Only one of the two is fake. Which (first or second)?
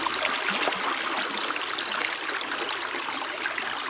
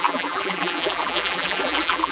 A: second